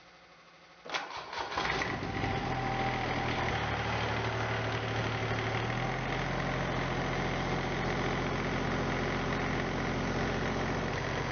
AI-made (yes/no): no